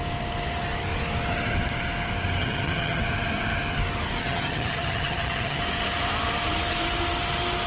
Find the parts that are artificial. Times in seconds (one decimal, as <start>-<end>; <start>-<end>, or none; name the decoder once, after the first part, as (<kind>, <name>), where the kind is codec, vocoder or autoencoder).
2.4-3.0 (vocoder, HiFi-GAN); 4.2-5.6